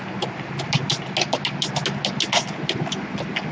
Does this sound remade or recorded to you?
recorded